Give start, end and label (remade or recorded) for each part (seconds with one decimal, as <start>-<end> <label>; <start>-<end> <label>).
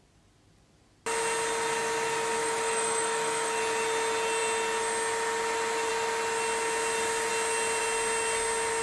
0.0-2.4 recorded; 2.4-3.6 remade; 3.6-8.8 recorded